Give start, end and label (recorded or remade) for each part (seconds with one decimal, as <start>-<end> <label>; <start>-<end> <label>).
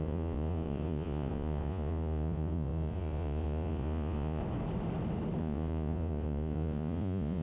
0.0-4.4 remade; 4.4-5.4 recorded; 5.4-7.4 remade